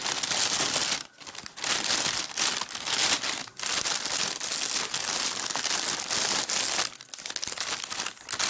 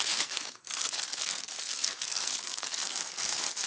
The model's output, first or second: second